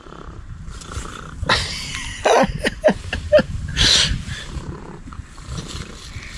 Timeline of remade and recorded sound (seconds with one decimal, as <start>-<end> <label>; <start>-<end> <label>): 0.0-1.1 remade; 1.1-2.5 recorded; 2.5-6.4 remade